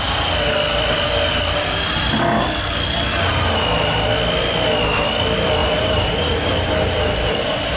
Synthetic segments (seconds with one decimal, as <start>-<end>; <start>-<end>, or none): 5.6-6.5